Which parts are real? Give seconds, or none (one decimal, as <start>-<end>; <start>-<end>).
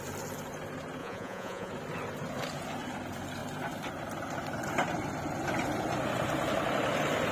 0.0-1.0; 1.7-7.3